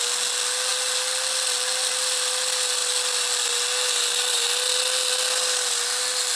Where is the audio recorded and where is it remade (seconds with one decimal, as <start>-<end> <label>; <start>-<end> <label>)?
0.0-6.4 recorded